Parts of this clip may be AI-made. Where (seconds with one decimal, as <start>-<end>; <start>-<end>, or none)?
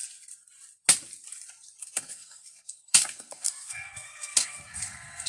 1.8-5.3